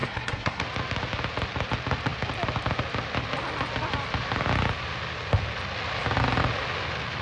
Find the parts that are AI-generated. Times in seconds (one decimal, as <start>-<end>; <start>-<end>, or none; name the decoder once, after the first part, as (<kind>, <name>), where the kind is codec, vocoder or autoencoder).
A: 0.0-0.6 (codec, SNAC)